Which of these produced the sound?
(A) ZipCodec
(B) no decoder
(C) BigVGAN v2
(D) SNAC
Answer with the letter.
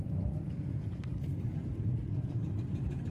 B